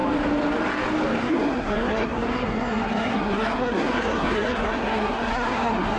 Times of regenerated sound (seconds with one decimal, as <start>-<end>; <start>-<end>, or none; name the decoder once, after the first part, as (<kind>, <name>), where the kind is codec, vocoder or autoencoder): 1.2-6.0 (codec, SNAC)